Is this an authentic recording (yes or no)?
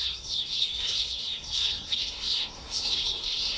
no